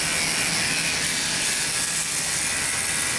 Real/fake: real